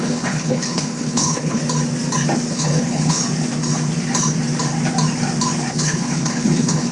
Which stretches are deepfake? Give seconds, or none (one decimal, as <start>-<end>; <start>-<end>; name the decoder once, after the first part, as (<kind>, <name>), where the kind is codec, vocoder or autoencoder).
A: 0.0-1.6 (codec, HILCodec); 2.5-3.2; 5.7-6.9